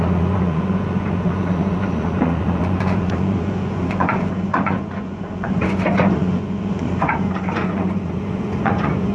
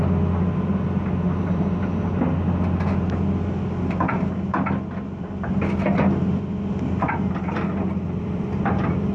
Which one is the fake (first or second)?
first